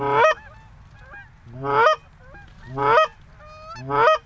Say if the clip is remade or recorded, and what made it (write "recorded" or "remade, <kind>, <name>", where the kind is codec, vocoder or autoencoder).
recorded